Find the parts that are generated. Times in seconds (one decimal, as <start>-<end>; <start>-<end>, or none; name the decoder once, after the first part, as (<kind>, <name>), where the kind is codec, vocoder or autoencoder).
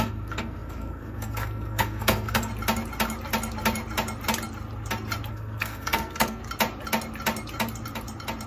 0.0-2.5 (codec, SNAC); 5.3-6.4